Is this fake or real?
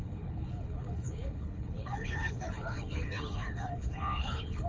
fake